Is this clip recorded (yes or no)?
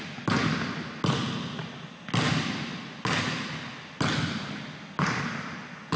yes